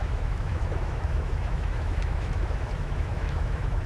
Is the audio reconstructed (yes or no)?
yes